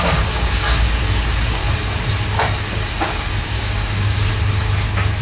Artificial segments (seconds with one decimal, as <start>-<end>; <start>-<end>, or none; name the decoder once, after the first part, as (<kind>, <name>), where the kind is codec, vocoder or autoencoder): 0.0-1.6 (codec, DAC); 3.4-4.3